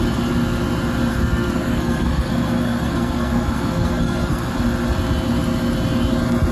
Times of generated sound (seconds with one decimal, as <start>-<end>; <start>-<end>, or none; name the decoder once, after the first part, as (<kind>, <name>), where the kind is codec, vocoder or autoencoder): 1.1-4.5 (codec, SNAC)